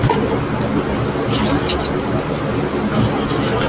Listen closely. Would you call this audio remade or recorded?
recorded